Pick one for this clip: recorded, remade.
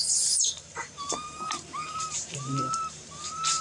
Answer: remade